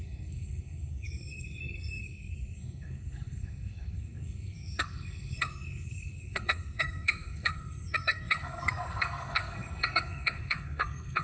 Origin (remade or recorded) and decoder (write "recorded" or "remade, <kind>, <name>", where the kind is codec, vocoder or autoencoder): remade, codec, SNAC